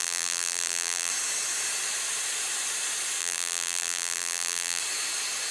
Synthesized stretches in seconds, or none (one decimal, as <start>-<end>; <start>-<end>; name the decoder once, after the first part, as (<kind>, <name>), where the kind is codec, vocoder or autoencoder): 0.0-1.1 (vocoder, BigVGAN v2); 3.2-4.8